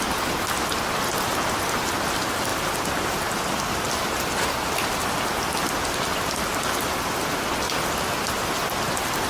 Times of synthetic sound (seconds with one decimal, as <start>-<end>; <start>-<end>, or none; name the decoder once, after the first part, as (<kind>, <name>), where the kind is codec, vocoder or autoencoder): none